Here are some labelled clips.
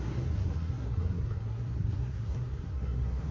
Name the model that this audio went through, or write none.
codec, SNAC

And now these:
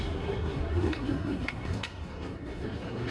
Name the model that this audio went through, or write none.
codec, SNAC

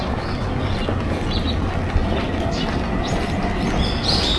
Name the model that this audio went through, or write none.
none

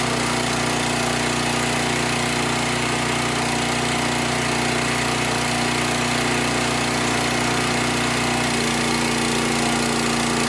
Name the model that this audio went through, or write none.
none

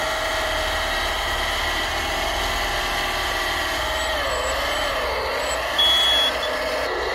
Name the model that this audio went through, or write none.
none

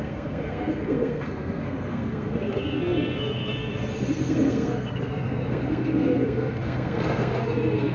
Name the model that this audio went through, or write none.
codec, SNAC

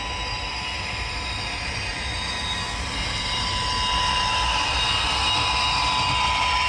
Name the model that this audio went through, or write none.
none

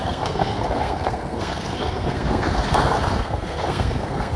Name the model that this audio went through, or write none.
codec, SNAC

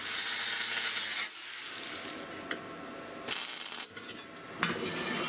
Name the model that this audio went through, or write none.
none